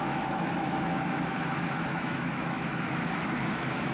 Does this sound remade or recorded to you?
remade